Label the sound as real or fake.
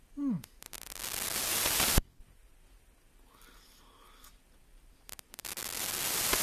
real